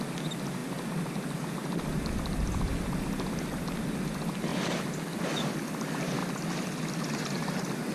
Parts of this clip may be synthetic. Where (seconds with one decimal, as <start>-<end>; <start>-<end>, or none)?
1.6-2.7; 4.5-5.6; 6.2-7.2

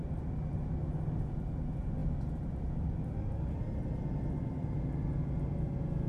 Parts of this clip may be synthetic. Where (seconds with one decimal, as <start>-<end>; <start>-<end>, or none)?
none